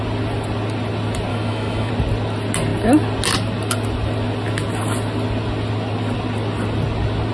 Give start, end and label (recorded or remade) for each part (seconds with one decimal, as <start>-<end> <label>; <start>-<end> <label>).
0.0-1.3 recorded; 1.3-1.9 remade; 1.9-7.3 recorded